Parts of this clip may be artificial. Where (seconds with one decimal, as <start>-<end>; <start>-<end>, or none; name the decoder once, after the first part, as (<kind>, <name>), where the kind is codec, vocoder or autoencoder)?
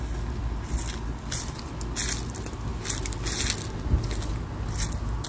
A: none